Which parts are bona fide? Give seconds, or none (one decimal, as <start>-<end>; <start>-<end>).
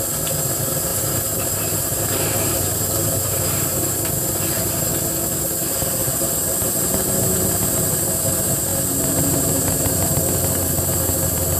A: 0.0-0.9; 3.9-6.0; 8.2-8.7; 10.2-11.6